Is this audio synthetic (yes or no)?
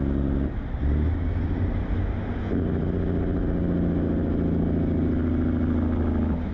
no